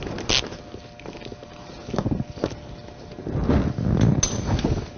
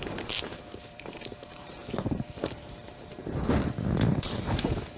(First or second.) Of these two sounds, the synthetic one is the second